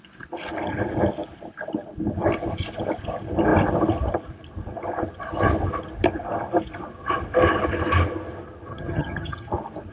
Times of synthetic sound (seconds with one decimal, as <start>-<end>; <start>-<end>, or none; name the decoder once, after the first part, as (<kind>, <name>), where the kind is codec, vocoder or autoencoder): 8.7-9.5 (vocoder, HiFi-GAN)